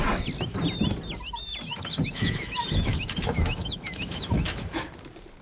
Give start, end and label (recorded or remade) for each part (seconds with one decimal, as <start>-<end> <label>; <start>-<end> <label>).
0.0-1.7 recorded; 1.7-4.8 remade; 4.8-5.4 recorded